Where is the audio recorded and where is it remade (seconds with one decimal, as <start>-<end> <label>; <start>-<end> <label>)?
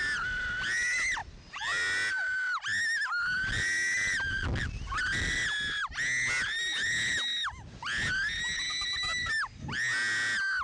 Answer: 0.0-10.6 recorded